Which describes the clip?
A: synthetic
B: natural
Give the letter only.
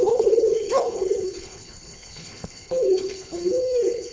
A